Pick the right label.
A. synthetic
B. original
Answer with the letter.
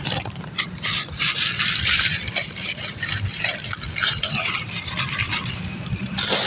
A